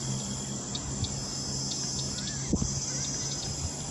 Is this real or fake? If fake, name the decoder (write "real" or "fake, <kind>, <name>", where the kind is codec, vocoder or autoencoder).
real